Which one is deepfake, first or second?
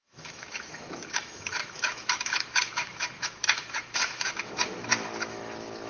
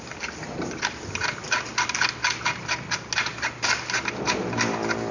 first